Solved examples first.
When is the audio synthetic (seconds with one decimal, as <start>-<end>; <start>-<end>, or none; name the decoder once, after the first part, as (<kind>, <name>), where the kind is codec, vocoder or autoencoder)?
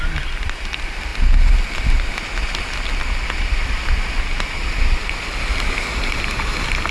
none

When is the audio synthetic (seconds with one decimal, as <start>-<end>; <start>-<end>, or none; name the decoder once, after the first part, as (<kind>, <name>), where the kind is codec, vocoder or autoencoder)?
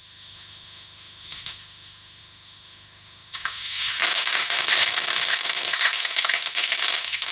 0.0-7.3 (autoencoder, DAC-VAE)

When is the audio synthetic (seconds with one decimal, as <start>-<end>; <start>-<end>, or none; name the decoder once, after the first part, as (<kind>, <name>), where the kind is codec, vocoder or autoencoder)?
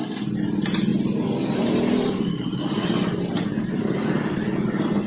none